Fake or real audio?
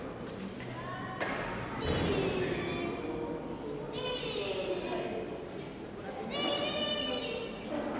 real